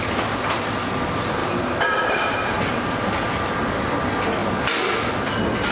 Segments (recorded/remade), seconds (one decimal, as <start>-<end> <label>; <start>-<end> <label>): 0.0-1.4 recorded; 1.4-3.1 remade; 3.1-5.7 recorded